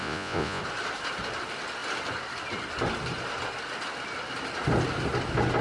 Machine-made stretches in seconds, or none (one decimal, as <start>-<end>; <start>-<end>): 0.0-0.6